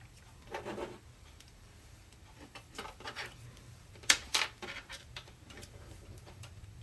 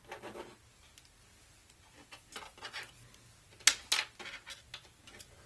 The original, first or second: second